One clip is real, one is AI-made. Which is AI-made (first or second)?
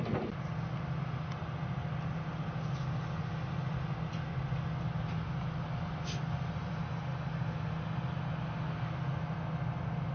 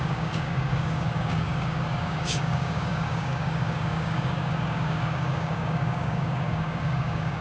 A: second